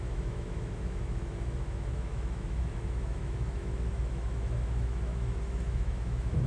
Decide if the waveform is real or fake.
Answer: fake